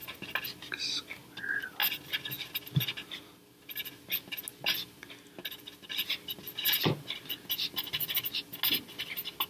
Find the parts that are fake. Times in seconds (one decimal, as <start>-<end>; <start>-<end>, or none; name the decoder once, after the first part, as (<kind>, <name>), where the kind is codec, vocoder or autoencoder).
none